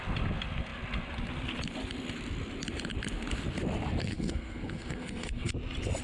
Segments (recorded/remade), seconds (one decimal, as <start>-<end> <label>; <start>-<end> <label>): 0.0-4.0 recorded; 4.0-5.5 remade; 5.5-6.0 recorded